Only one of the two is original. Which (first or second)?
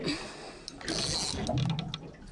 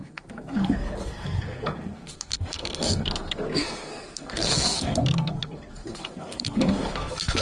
first